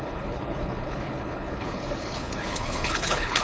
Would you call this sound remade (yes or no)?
yes